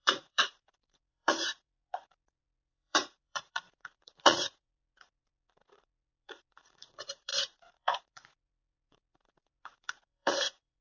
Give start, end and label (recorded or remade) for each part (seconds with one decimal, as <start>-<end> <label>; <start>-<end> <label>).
0.0-10.8 remade